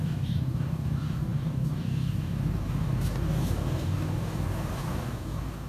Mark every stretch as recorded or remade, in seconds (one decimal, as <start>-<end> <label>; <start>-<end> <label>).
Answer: 0.0-5.7 remade